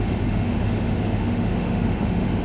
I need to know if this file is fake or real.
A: fake